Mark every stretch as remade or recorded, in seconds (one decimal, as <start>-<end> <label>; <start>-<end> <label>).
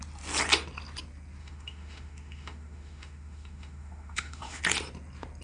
0.0-1.4 recorded; 1.4-4.6 remade; 4.6-5.4 recorded